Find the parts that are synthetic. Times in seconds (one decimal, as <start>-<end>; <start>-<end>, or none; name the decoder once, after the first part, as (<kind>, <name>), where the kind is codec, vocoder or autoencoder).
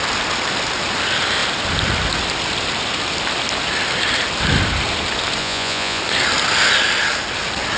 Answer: 5.4-6.0 (vocoder, Vocos)